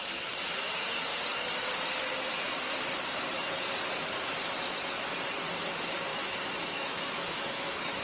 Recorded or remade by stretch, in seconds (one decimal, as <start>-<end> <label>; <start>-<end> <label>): 0.0-6.1 recorded; 6.1-8.0 remade